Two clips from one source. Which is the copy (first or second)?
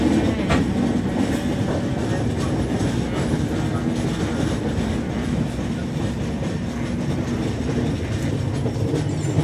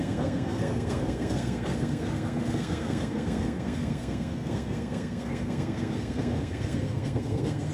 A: second